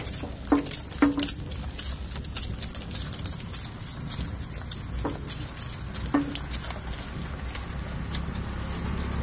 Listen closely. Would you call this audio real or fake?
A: real